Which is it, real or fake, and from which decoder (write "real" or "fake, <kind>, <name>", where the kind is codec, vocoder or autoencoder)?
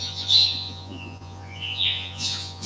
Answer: fake, vocoder, Vocos